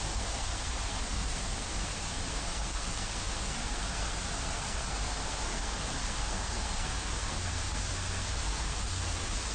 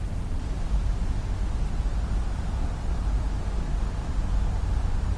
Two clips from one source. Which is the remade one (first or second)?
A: first